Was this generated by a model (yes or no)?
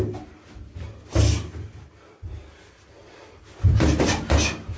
no